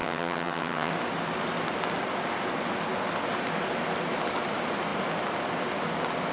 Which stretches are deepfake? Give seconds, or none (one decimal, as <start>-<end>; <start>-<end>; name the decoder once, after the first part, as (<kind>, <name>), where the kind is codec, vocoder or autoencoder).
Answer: 0.0-0.9 (vocoder, HiFi-GAN)